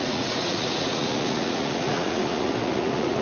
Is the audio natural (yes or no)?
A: no